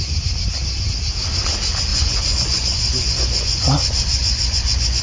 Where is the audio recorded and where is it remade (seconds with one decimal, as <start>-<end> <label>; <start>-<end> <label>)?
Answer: 0.0-1.9 recorded; 1.9-5.0 remade